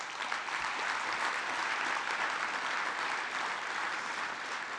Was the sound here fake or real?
real